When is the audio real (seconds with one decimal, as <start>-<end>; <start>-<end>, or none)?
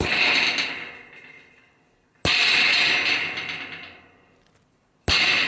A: 0.0-5.5